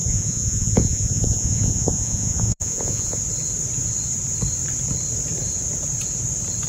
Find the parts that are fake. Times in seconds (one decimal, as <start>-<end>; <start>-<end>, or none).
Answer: 0.0-3.2